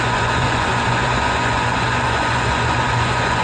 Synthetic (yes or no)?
yes